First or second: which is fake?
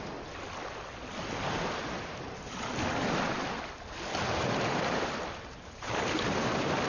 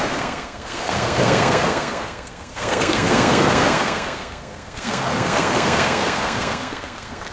second